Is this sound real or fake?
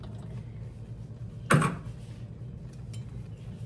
real